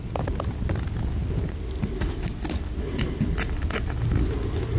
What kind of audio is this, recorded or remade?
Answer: recorded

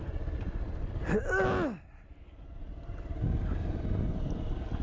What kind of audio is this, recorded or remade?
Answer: recorded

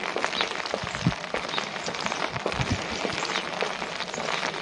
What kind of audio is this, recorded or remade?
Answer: remade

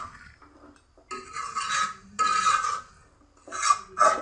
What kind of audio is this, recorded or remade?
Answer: recorded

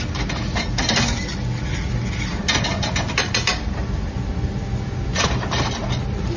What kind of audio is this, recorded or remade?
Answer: recorded